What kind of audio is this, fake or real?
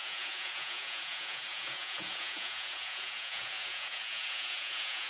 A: fake